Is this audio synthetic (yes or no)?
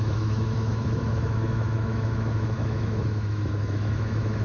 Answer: yes